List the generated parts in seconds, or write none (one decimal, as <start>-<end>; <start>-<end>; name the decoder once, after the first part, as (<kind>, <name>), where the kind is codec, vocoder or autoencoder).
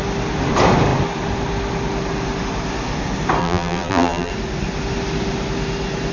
3.4-4.3 (vocoder, BigVGAN v2)